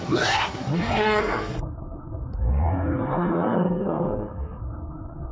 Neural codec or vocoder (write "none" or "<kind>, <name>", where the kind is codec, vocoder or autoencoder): codec, SNAC